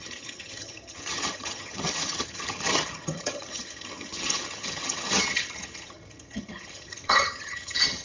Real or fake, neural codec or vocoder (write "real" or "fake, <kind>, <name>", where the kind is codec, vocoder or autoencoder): fake, vocoder, HiFi-GAN